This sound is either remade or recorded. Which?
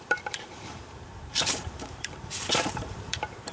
remade